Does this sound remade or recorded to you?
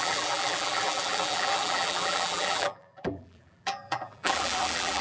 remade